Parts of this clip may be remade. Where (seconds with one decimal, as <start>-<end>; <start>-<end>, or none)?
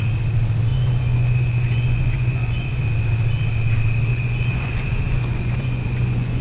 0.7-2.8; 4.1-6.4